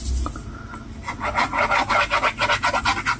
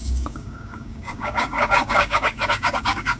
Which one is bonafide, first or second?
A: first